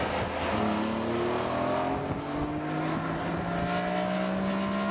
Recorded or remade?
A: recorded